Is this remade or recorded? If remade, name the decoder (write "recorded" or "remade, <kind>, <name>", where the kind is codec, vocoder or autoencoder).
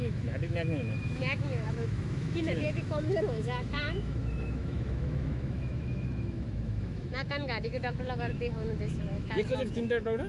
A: remade, autoencoder, DAC-VAE